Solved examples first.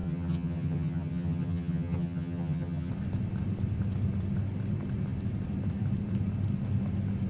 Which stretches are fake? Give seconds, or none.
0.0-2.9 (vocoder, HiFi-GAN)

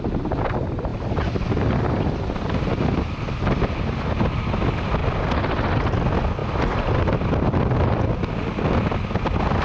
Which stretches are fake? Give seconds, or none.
none

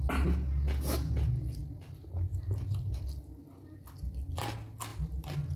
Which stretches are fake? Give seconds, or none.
none

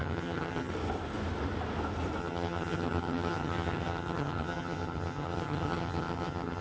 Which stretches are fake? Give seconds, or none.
0.0-0.7 (vocoder, HiFi-GAN); 2.2-6.6

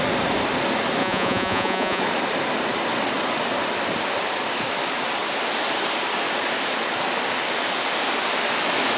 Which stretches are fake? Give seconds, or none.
1.0-2.0 (vocoder, Vocos)